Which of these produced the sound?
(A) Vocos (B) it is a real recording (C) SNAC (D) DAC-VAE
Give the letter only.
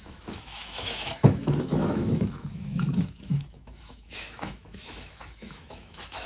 D